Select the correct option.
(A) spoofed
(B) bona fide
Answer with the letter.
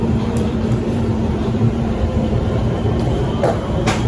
A